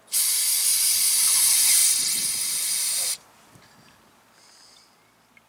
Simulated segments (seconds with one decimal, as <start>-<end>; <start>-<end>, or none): none